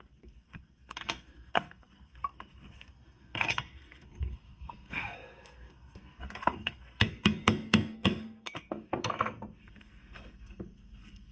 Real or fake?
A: fake